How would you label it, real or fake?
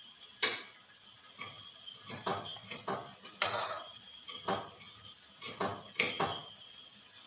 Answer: real